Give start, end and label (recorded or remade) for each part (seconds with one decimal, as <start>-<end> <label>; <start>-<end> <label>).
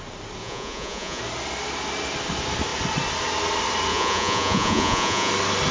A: 0.0-0.4 recorded; 0.4-1.2 remade; 1.2-3.9 recorded; 3.9-5.3 remade; 5.3-5.7 recorded